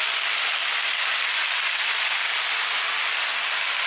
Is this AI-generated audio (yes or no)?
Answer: no